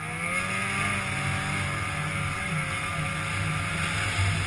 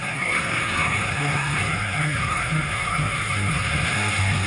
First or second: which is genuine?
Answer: first